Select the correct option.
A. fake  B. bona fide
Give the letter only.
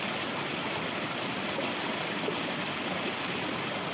B